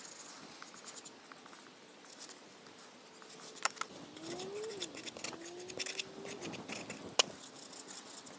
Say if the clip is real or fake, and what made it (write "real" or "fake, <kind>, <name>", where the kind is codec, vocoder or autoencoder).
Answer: real